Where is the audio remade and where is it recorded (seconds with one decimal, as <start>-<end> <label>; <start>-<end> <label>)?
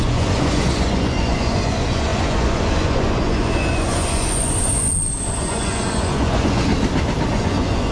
0.0-6.7 remade; 6.7-7.3 recorded; 7.3-7.9 remade